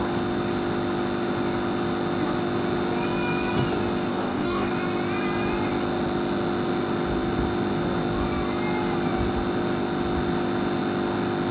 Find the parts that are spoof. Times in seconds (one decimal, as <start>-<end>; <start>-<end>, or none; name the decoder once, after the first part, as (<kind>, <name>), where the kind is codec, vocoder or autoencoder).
4.1-4.7 (codec, DAC)

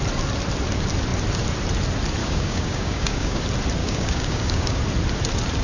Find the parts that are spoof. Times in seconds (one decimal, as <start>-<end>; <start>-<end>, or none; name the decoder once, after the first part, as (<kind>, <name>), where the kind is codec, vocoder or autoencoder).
2.2-3.4 (codec, DAC); 3.8-4.8

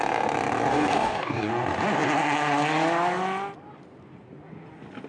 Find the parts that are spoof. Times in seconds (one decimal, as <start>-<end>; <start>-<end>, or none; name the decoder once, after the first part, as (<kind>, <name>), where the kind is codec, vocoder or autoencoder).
0.7-1.5 (codec, DAC)